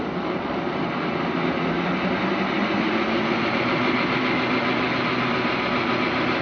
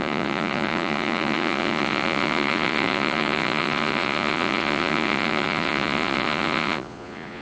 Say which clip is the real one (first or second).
first